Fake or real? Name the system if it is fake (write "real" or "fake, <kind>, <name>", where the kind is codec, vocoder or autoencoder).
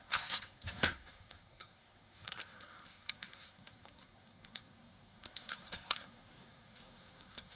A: fake, codec, SNAC